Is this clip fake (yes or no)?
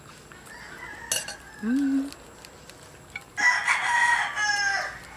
no